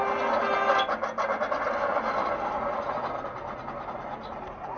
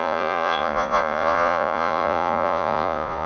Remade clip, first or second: second